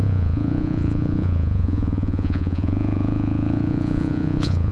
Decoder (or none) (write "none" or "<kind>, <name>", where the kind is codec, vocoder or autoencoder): vocoder, Vocos